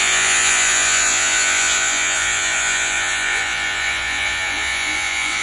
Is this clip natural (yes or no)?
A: no